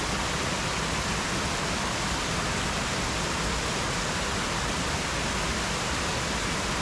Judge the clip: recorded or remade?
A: recorded